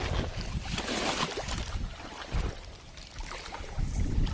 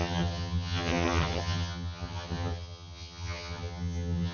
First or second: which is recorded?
first